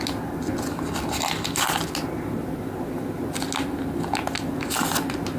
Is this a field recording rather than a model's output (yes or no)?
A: yes